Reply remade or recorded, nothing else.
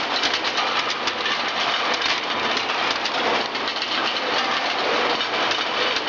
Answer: recorded